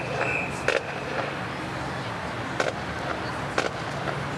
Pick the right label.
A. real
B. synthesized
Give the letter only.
A